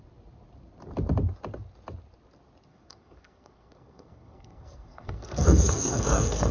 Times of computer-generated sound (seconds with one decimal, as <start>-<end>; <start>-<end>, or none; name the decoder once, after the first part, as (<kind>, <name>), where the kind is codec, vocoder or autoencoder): 2.7-6.5 (codec, SNAC)